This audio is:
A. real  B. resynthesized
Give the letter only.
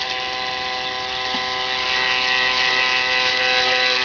A